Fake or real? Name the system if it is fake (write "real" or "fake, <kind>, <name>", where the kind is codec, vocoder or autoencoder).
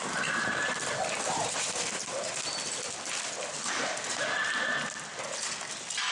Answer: real